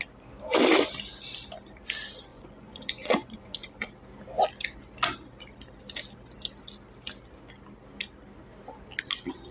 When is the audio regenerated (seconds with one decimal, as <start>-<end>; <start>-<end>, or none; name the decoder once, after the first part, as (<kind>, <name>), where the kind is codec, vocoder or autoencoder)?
2.3-3.9 (vocoder, Vocos)